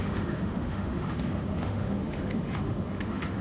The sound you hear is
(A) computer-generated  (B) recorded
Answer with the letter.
A